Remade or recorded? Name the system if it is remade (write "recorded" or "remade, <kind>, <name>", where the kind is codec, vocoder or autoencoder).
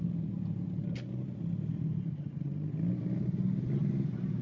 recorded